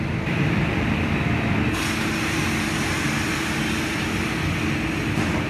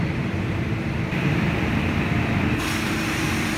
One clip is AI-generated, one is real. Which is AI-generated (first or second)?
second